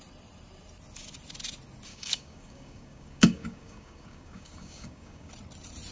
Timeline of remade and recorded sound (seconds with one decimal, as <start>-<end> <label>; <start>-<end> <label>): 0.0-1.9 recorded; 1.9-5.3 remade; 5.3-5.9 recorded